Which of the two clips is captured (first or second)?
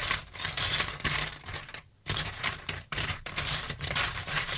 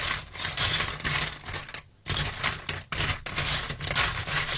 second